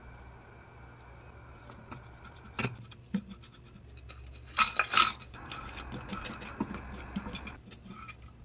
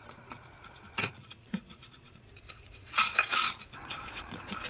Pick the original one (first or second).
first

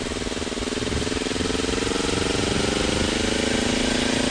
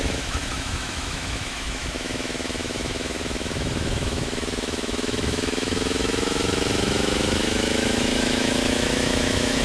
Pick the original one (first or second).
first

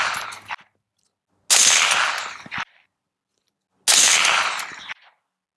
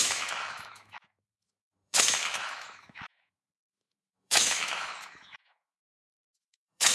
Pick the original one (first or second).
first